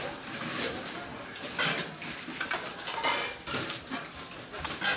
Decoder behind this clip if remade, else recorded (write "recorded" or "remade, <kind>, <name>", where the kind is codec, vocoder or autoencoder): recorded